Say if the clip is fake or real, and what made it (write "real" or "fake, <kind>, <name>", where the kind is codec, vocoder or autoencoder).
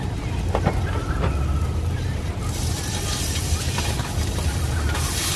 real